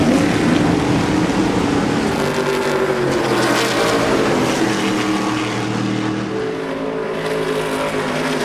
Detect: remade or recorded recorded